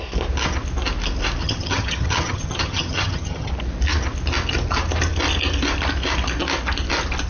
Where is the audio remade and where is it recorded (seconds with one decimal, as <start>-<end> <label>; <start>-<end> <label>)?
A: 0.0-1.4 recorded; 1.4-3.5 remade; 3.5-7.3 recorded